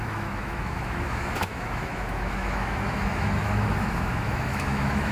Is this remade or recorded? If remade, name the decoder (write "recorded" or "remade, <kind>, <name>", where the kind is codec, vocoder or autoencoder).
remade, autoencoder, DAC-VAE